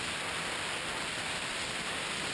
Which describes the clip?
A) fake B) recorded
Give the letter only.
B